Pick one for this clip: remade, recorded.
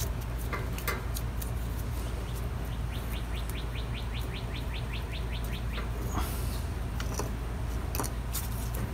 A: recorded